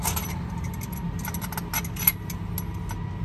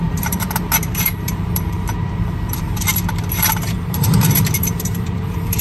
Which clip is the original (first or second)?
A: first